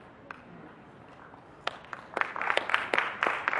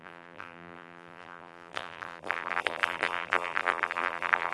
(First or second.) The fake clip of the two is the second